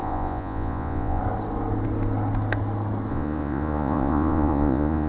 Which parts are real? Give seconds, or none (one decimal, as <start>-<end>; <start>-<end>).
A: 1.2-3.1